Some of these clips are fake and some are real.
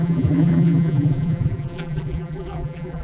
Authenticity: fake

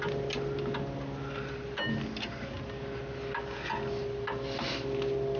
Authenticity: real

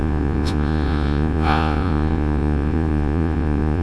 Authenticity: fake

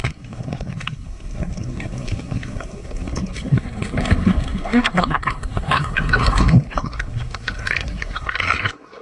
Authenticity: fake